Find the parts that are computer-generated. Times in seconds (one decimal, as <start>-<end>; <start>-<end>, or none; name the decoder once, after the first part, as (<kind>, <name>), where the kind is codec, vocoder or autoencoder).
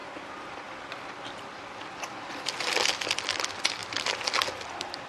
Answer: 0.0-3.1 (vocoder, BigVGAN v2); 3.8-5.1